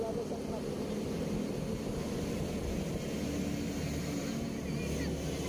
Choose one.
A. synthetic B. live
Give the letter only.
B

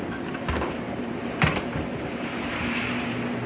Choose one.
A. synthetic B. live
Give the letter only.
A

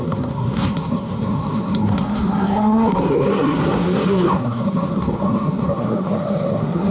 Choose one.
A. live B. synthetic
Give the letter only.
B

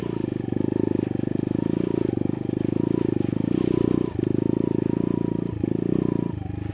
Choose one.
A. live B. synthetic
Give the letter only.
A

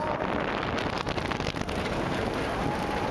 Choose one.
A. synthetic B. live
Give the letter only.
B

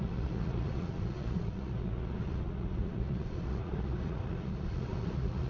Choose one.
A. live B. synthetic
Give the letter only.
B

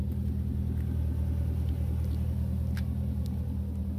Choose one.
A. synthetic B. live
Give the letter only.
B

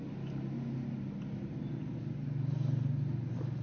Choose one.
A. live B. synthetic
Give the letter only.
A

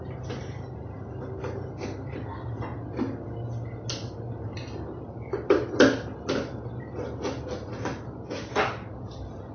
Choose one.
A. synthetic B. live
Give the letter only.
B